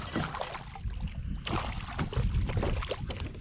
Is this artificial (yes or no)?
no